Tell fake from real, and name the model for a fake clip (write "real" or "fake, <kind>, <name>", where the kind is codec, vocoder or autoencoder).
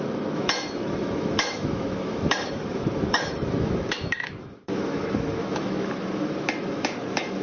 fake, autoencoder, DAC-VAE